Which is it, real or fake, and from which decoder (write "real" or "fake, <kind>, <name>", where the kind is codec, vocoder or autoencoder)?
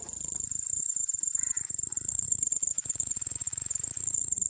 fake, vocoder, Vocos